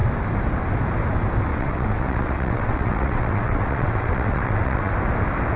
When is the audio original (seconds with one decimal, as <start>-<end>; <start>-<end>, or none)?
0.0-1.5; 4.9-5.6